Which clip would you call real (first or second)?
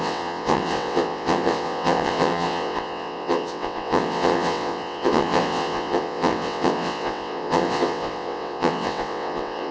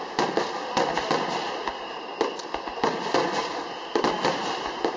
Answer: second